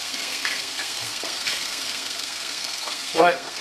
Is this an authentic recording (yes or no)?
no